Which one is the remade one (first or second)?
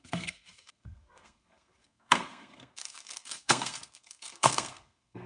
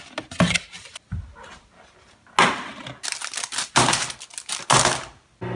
first